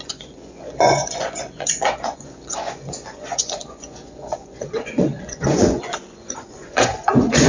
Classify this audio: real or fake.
fake